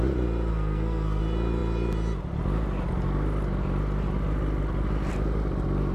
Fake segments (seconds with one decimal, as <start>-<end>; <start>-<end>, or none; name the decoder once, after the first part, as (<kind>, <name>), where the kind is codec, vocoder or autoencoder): 0.5-1.2 (codec, SNAC)